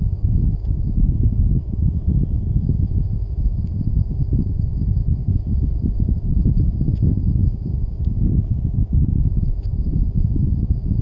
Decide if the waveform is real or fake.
fake